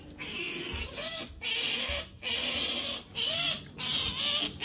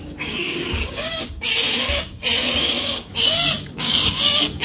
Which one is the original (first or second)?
first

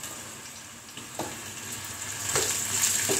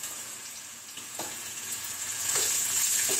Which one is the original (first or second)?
first